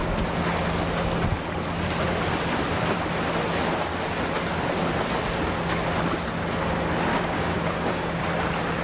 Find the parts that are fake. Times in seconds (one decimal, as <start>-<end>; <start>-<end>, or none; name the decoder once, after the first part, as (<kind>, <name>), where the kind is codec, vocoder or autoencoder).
7.1-8.2 (codec, DAC)